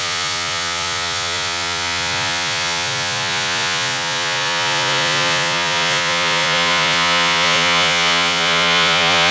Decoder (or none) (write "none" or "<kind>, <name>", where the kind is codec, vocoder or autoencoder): vocoder, Vocos